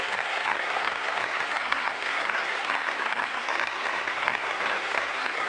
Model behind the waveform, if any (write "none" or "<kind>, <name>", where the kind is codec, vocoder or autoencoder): codec, SNAC